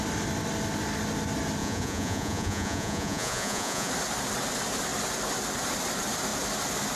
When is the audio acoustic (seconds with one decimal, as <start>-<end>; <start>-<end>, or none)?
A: 0.0-1.6; 3.9-7.0